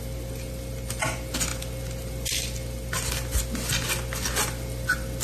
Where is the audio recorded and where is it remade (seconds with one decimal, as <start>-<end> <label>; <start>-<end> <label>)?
0.0-5.2 recorded